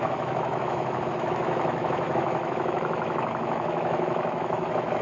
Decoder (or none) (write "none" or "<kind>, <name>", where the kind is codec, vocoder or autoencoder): autoencoder, DAC-VAE